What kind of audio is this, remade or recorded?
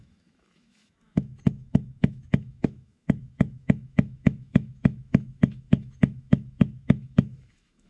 remade